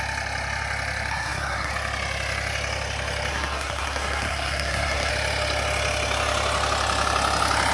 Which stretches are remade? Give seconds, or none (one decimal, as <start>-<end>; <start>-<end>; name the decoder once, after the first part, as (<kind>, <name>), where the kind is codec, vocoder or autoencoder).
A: 1.1-1.7 (codec, SNAC); 3.3-5.1